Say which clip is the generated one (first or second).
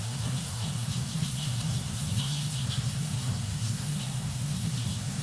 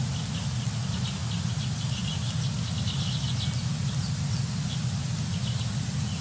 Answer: first